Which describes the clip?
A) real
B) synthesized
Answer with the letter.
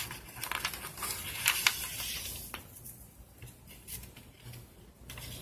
A